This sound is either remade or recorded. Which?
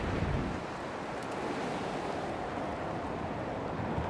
recorded